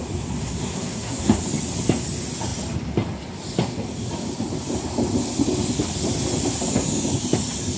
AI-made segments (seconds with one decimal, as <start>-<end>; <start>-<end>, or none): 0.4-1.4